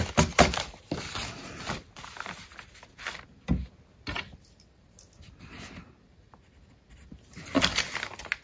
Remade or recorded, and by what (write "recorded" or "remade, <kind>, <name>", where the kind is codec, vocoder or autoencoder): recorded